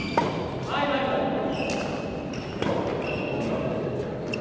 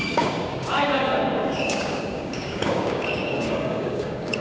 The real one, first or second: first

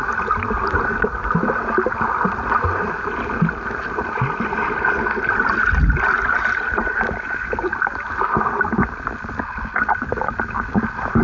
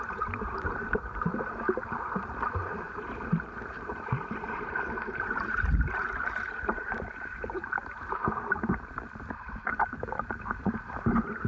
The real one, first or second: first